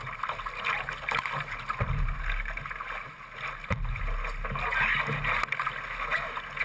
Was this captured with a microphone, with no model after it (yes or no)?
yes